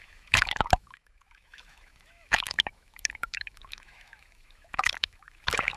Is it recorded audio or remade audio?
remade